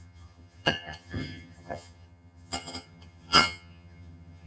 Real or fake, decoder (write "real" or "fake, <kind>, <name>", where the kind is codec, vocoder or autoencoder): fake, vocoder, HiFi-GAN